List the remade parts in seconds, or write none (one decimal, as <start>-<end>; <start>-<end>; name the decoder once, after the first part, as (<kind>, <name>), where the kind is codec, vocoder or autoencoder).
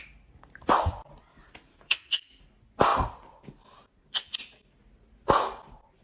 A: 1.7-2.4 (codec, SNAC)